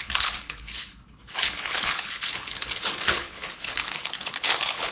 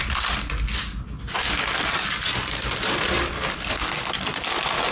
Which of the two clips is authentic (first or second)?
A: second